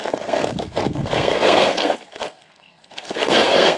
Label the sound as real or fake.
fake